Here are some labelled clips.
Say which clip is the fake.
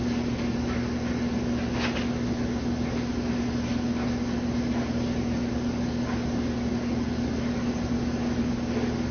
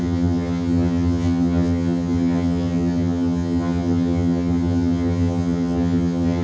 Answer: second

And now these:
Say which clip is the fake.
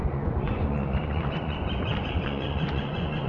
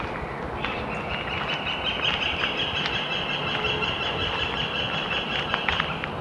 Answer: first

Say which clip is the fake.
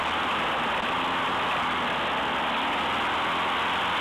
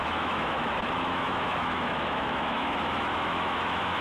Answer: second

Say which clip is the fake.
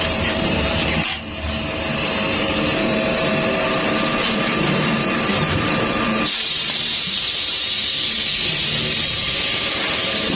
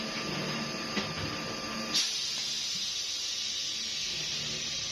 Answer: first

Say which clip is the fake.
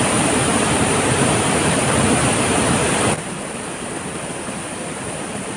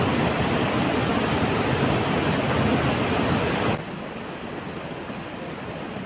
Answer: first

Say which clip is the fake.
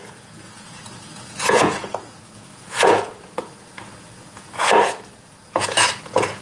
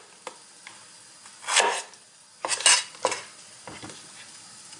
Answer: first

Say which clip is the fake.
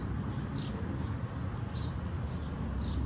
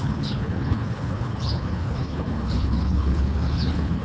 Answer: second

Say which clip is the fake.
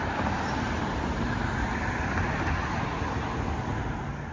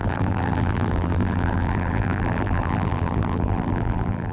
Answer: second